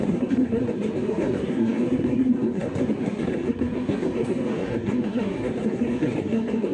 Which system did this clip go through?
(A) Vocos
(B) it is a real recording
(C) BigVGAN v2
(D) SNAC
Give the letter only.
D